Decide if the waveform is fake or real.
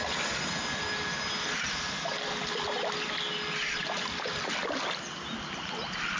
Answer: real